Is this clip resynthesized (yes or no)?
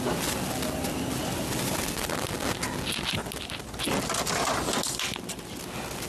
no